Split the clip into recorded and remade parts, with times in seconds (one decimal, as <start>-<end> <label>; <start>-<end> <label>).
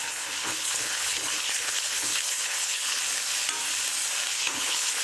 0.0-3.0 remade; 3.0-4.3 recorded; 4.3-5.0 remade